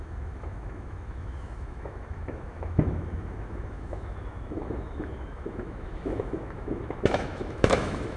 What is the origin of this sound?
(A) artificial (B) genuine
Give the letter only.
A